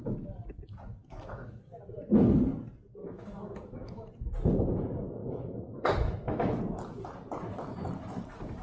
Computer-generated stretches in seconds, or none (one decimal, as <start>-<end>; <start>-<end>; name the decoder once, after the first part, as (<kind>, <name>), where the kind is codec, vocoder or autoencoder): 1.0-1.8 (autoencoder, DAC-VAE); 3.0-4.1; 5.2-6.6